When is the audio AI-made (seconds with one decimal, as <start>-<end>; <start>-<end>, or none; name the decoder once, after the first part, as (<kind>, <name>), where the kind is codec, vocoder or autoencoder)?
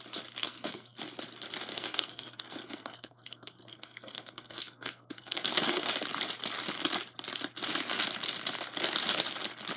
0.4-1.0 (codec, SNAC); 1.7-5.9